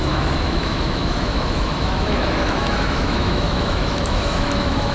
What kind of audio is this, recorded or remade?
remade